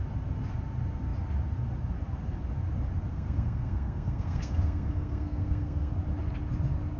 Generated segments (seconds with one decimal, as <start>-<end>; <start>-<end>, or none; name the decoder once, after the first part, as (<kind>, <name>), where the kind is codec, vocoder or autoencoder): 3.1-5.9 (codec, SNAC)